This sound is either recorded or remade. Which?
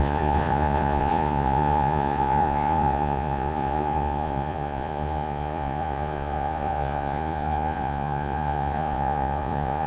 remade